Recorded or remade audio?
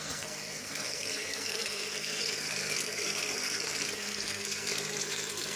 remade